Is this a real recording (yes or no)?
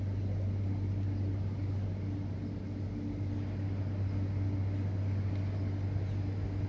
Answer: yes